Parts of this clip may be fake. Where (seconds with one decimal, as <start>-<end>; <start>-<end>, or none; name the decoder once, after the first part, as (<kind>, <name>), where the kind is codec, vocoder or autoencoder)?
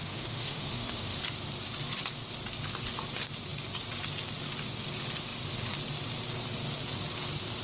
0.0-1.2 (autoencoder, DAC-VAE)